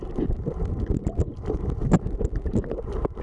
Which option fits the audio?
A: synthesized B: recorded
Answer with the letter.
B